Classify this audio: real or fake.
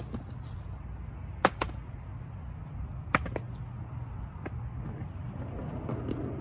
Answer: real